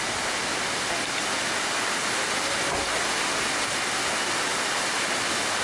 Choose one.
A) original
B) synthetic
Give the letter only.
A